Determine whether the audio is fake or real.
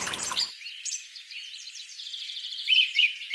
fake